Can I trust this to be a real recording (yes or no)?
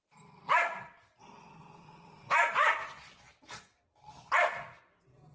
no